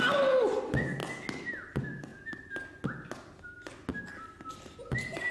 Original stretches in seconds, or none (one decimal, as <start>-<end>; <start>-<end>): 0.0-5.3